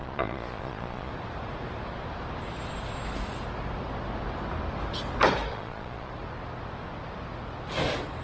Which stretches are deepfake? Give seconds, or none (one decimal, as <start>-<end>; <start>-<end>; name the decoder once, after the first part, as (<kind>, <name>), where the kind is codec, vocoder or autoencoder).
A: 0.0-1.1 (vocoder, Vocos); 5.5-6.1

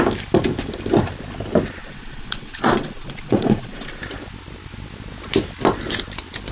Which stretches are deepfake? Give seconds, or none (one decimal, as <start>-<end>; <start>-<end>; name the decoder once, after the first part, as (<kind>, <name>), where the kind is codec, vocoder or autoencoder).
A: 1.8-4.0 (vocoder, Vocos)

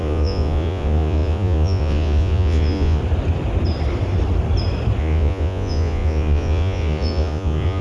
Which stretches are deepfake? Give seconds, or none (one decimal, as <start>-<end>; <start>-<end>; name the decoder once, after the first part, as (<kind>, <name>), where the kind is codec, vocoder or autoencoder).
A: 0.0-3.0 (vocoder, Vocos); 5.0-7.8